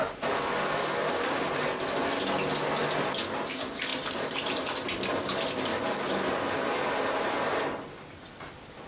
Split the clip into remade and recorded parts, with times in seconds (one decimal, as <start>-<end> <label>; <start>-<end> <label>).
0.0-8.9 recorded